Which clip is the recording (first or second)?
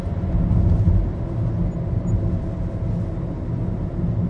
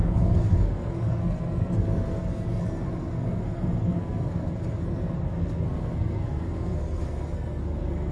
first